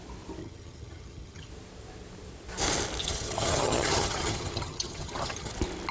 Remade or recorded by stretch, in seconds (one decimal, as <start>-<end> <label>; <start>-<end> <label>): 0.0-0.4 recorded; 0.4-1.5 remade; 1.5-3.0 recorded; 3.0-5.5 remade; 5.5-5.9 recorded